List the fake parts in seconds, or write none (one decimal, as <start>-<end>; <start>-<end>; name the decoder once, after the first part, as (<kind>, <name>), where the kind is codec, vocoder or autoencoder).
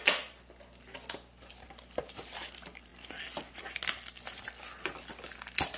none